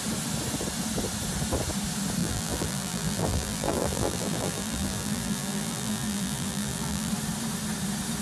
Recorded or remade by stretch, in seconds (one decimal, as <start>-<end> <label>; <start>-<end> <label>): 0.0-2.2 recorded; 2.2-7.1 remade; 7.1-8.2 recorded